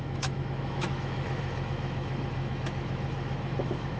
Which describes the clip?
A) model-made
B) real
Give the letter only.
A